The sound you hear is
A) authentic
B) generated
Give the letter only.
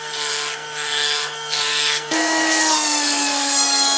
B